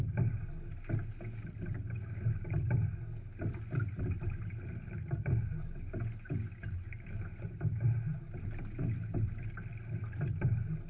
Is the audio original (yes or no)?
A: yes